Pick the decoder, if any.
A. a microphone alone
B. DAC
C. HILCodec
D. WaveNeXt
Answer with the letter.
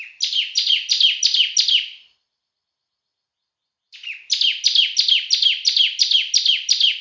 A